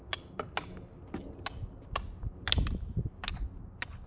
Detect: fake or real real